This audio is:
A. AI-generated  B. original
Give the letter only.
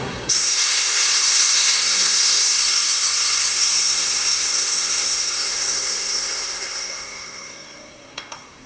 A